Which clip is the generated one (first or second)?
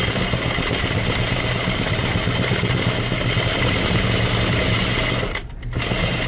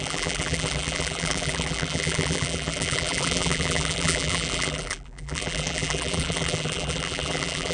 second